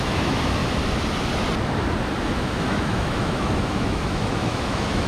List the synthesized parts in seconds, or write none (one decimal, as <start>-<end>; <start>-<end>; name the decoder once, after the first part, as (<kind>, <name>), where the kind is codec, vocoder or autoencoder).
0.0-0.6 (autoencoder, DAC-VAE); 2.2-5.1